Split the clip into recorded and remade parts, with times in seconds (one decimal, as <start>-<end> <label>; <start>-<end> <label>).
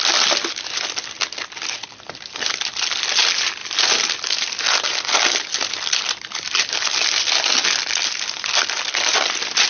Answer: 0.0-9.7 recorded